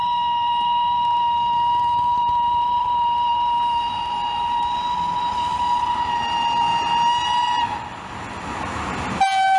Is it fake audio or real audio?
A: real